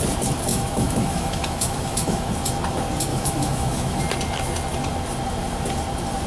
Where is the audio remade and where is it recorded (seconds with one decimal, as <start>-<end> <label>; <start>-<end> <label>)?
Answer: 0.0-0.5 recorded; 0.5-2.3 remade; 2.3-3.1 recorded; 3.1-4.0 remade; 4.0-6.3 recorded